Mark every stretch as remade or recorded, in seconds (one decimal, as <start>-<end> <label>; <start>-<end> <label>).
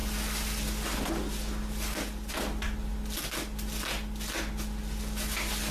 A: 0.0-5.7 recorded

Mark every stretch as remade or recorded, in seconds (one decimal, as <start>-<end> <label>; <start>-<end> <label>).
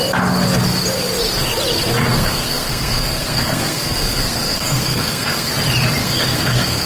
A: 0.0-2.1 recorded; 2.1-5.5 remade; 5.5-6.0 recorded; 6.0-6.9 remade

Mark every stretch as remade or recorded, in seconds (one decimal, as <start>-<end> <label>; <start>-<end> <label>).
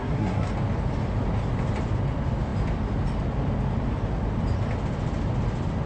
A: 0.0-0.5 remade; 0.5-5.9 recorded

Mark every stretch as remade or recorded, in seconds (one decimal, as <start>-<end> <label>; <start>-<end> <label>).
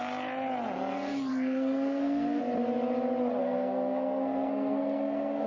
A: 0.0-1.3 recorded; 1.3-2.4 remade; 2.4-3.4 recorded; 3.4-5.5 remade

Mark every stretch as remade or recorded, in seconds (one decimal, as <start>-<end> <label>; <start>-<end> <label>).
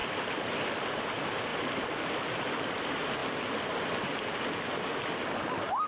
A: 0.0-5.9 recorded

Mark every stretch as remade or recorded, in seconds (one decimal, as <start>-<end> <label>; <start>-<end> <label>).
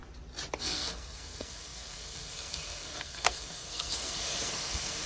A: 0.0-0.6 recorded; 0.6-5.1 remade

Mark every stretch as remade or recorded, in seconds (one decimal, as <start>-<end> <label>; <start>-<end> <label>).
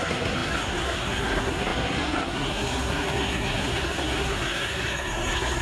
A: 0.0-5.6 remade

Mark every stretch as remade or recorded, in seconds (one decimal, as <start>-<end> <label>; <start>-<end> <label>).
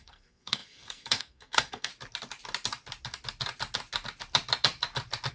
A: 0.0-1.9 remade; 1.9-5.3 recorded